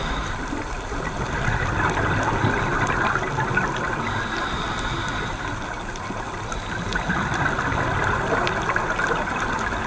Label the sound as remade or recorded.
recorded